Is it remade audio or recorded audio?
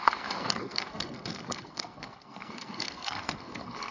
remade